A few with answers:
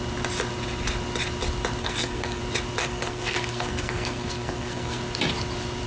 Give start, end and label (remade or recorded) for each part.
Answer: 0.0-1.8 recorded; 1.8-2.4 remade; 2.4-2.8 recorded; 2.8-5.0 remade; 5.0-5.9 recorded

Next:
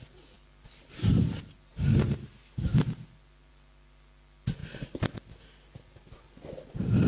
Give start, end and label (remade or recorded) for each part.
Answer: 0.0-7.1 recorded